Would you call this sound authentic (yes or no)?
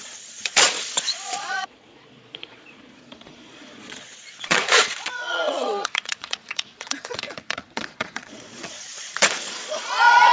no